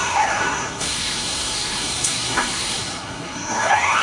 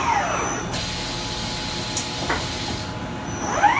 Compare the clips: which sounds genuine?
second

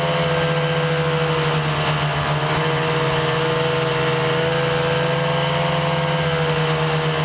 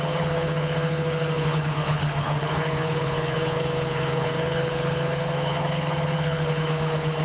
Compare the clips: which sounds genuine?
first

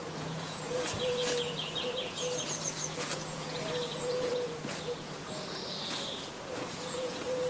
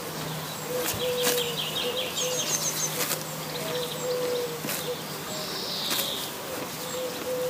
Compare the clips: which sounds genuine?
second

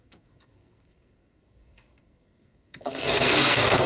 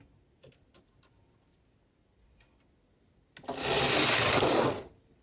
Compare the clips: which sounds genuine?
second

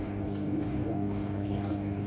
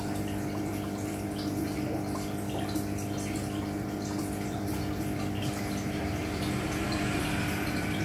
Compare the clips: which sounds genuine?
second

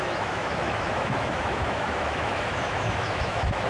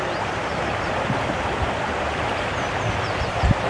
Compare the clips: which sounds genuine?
second